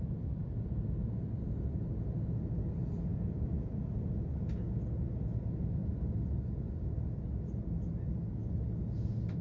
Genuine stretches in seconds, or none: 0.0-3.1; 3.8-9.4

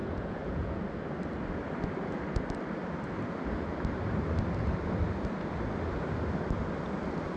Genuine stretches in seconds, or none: 0.7-7.4

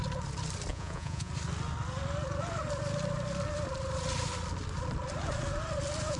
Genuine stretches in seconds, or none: 0.0-0.7; 1.3-6.2

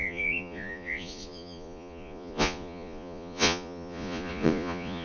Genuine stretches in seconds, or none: none

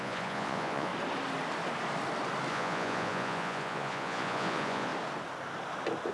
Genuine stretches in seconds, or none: 0.9-2.5; 4.9-6.1

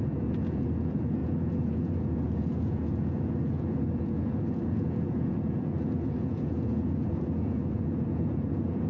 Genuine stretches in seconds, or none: none